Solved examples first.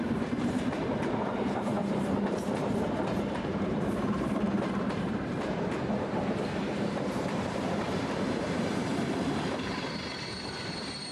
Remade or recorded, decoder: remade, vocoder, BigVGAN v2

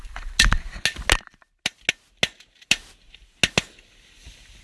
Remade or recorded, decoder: recorded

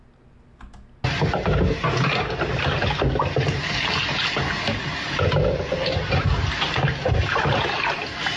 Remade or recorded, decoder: recorded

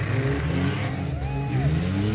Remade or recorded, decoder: recorded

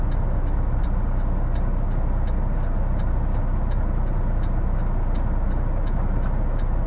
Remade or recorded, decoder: recorded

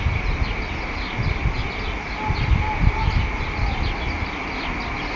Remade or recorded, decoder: recorded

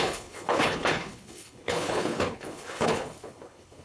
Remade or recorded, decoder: remade, codec, HILCodec